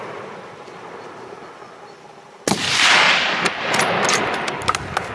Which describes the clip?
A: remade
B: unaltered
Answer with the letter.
B